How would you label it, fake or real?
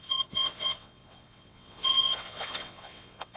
fake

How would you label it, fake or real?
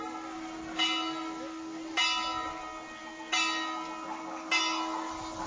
real